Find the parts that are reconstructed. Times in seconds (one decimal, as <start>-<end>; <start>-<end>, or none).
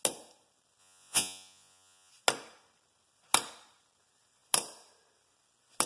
0.8-2.1